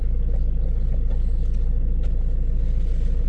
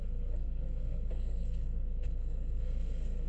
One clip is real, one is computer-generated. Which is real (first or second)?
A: first